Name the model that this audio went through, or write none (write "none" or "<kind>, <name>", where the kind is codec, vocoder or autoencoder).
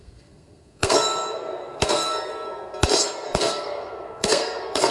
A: codec, SNAC